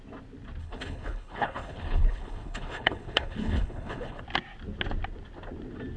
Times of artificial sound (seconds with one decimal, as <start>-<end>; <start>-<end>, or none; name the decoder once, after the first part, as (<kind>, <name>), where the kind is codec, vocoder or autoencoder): 0.6-4.2 (codec, HILCodec)